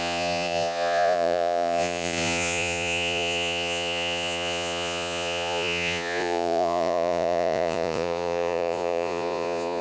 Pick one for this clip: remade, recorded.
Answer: remade